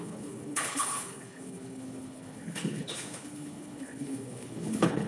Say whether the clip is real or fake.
fake